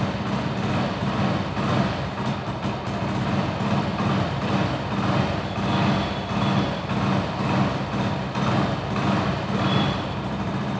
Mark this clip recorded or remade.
recorded